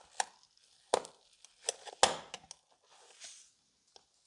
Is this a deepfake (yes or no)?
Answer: no